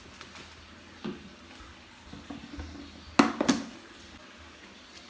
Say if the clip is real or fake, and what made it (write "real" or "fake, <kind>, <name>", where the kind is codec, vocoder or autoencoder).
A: real